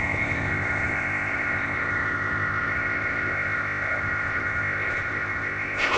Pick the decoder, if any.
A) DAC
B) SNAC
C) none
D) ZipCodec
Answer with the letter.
D